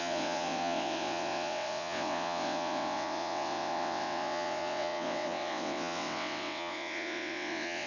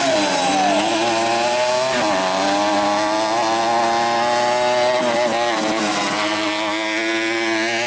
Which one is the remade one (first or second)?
first